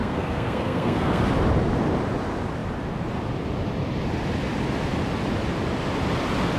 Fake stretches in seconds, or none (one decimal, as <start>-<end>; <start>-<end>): 0.0-1.2